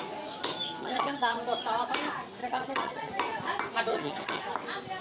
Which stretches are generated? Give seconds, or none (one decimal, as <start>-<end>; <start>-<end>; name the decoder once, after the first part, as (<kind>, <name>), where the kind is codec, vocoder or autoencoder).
0.8-1.4 (vocoder, HiFi-GAN); 2.4-3.1; 3.9-4.4